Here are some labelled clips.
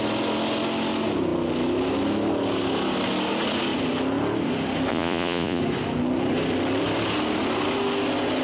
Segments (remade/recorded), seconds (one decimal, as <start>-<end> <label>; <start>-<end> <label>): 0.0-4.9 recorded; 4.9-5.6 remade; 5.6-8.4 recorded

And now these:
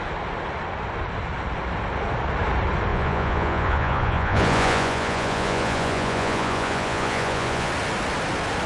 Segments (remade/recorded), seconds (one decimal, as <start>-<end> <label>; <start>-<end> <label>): 0.0-2.9 recorded; 2.9-7.7 remade; 7.7-8.7 recorded

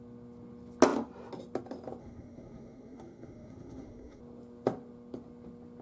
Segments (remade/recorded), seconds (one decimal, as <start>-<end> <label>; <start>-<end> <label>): 0.0-2.0 recorded; 2.0-4.2 remade; 4.2-5.8 recorded

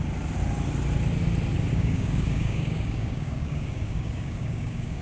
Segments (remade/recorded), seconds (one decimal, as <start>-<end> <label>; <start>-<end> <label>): 0.0-1.7 recorded; 1.7-5.0 remade

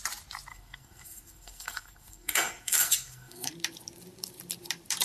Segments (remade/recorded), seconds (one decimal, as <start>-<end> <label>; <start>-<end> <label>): 0.0-0.5 recorded; 0.5-3.5 remade; 3.5-5.0 recorded

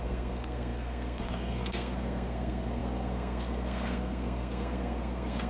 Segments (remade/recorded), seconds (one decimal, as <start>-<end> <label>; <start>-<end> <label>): 0.0-5.5 remade

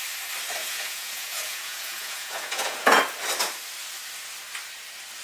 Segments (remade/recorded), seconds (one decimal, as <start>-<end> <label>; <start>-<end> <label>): 0.0-0.6 recorded; 0.6-3.0 remade; 3.0-5.2 recorded